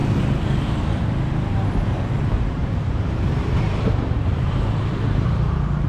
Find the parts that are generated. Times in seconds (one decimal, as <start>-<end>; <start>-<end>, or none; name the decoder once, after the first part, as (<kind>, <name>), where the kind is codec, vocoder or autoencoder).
0.0-1.0 (vocoder, BigVGAN v2); 2.6-5.9